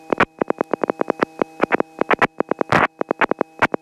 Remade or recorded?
recorded